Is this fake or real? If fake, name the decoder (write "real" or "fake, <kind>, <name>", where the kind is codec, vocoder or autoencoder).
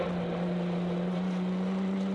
real